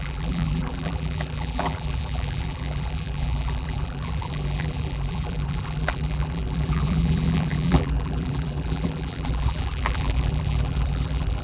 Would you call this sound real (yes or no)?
no